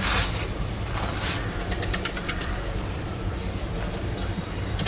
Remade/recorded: remade